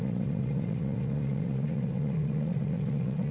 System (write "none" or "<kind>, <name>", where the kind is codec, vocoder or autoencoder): vocoder, Vocos